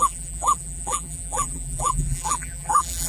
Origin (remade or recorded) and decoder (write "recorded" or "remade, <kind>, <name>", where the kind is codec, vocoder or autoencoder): remade, vocoder, BigVGAN v2